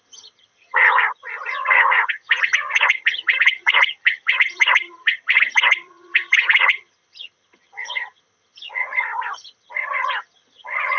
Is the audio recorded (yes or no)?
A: no